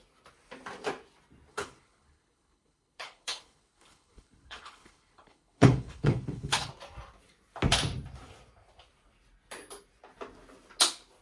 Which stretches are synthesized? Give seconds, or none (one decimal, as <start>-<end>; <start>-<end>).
1.5-6.7